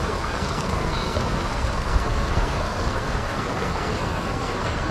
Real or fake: fake